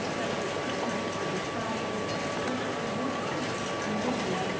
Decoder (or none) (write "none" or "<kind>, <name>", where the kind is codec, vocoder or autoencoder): none